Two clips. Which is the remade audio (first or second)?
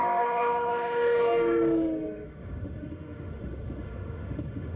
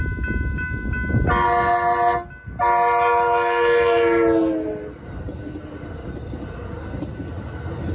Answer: first